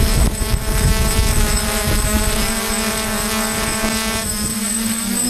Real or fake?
fake